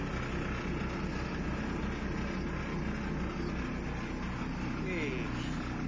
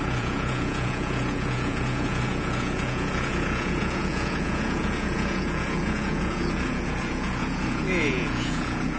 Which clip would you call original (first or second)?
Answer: first